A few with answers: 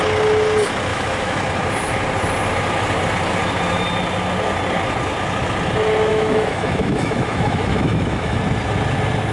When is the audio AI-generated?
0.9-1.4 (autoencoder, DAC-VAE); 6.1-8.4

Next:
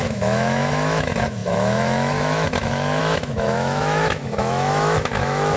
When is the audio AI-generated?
0.0-5.6 (autoencoder, DAC-VAE)

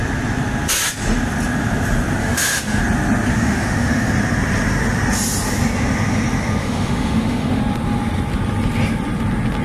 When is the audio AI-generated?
2.2-2.8 (autoencoder, DAC-VAE); 3.3-4.1; 6.6-7.6

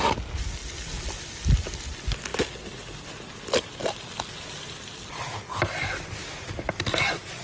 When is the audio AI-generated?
none

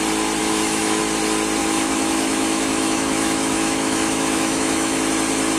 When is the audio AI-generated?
0.4-1.0 (autoencoder, DAC-VAE); 1.6-5.0

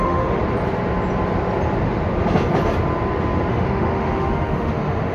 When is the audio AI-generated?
0.0-0.4 (autoencoder, DAC-VAE); 3.5-5.1

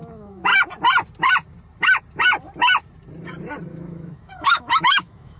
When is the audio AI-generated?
0.0-0.5 (autoencoder, DAC-VAE); 3.7-5.4